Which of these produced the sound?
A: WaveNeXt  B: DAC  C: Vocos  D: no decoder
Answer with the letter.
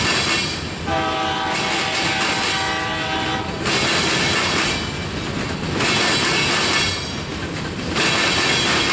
D